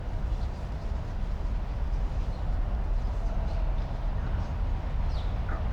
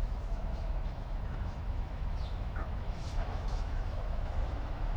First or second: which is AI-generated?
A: second